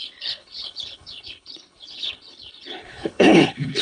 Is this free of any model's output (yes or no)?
no